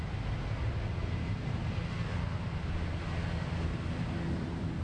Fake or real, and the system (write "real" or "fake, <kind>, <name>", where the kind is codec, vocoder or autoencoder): real